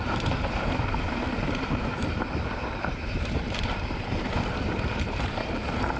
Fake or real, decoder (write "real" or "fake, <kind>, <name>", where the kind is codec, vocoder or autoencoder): fake, vocoder, BigVGAN v2